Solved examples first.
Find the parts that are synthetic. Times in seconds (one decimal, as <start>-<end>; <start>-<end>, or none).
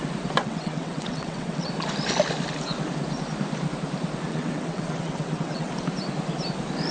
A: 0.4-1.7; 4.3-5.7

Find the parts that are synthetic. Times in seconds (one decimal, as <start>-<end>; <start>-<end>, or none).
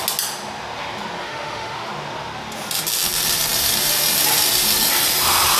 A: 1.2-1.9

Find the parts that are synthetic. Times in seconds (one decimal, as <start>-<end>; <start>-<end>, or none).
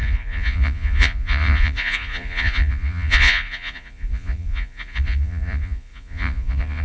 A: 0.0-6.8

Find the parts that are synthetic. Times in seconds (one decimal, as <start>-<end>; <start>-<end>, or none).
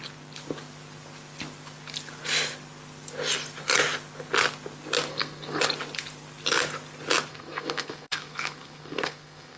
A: 5.1-5.6; 7.3-9.6